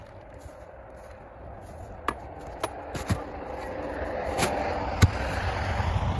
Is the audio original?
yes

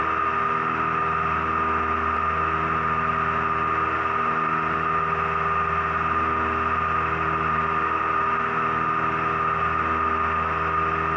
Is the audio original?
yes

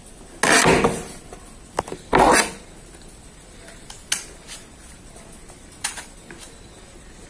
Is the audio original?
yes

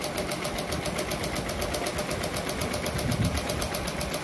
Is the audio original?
yes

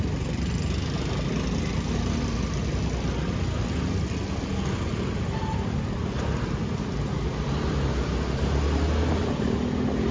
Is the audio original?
yes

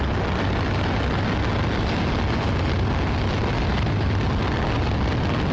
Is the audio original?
yes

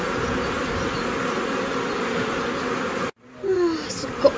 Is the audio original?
yes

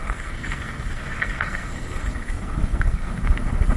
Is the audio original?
no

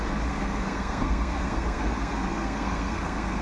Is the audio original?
no